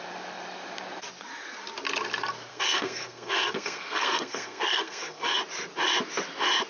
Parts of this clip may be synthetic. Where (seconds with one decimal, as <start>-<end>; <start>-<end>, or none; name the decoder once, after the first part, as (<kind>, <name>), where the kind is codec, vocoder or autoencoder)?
2.5-5.4 (codec, SNAC)